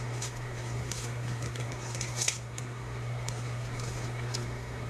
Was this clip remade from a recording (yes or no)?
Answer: yes